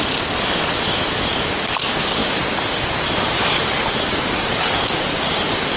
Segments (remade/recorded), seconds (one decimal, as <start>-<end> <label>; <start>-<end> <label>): 0.0-2.2 recorded; 2.2-5.8 remade